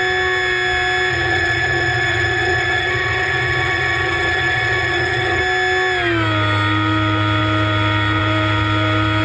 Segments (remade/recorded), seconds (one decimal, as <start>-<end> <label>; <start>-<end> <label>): 0.0-1.1 recorded; 1.1-5.4 remade; 5.4-9.2 recorded